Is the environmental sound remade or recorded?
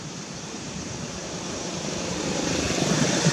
remade